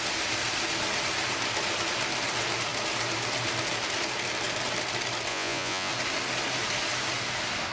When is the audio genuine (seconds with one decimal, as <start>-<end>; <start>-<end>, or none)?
0.0-5.3; 5.9-7.7